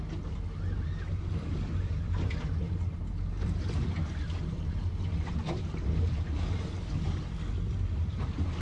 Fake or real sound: fake